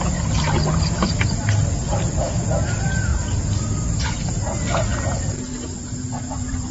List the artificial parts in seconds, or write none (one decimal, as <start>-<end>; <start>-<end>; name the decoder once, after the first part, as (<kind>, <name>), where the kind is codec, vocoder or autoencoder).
3.1-4.6 (vocoder, BigVGAN v2); 5.5-6.7

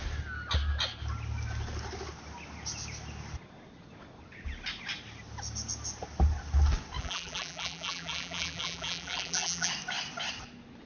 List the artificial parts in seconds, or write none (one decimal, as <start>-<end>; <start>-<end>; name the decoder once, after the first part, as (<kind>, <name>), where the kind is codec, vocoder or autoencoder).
7.0-9.7 (vocoder, BigVGAN v2)